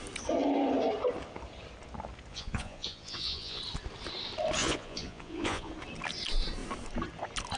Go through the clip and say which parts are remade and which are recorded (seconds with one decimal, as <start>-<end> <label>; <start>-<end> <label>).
0.0-2.3 recorded; 2.3-3.6 remade; 3.6-4.6 recorded; 4.6-5.7 remade; 5.7-7.6 recorded

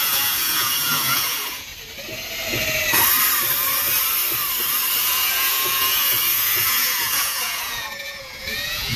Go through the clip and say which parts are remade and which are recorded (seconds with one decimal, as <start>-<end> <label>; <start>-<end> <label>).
0.0-1.7 remade; 1.7-5.0 recorded; 5.0-9.0 remade

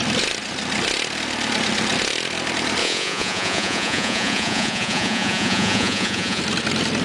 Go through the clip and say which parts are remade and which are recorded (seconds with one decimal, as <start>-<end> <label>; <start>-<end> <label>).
0.0-2.8 recorded; 2.8-6.4 remade; 6.4-7.0 recorded

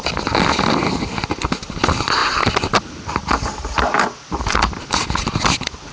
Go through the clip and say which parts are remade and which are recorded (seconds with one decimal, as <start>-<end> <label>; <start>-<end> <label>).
0.0-5.9 recorded

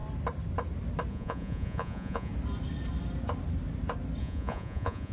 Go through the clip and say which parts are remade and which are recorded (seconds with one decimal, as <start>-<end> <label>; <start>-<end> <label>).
0.0-1.1 recorded; 1.1-2.3 remade; 2.3-4.2 recorded; 4.2-5.1 remade

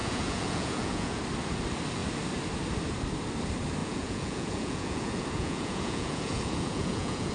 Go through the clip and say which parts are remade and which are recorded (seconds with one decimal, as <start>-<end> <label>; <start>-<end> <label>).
0.0-1.2 remade; 1.2-3.8 recorded; 3.8-7.3 remade

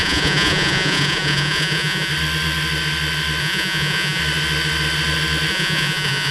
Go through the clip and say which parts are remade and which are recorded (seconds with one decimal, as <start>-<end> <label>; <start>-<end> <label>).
0.0-2.1 remade; 2.1-3.4 recorded; 3.4-4.2 remade; 4.2-5.5 recorded; 5.5-6.3 remade

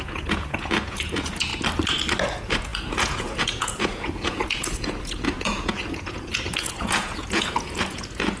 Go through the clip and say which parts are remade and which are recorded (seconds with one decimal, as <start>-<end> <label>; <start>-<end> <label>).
0.0-1.5 remade; 1.5-2.2 recorded; 2.2-8.4 remade